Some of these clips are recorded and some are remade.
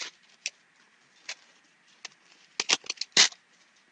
recorded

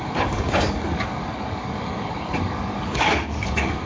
remade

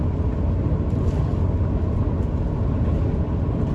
recorded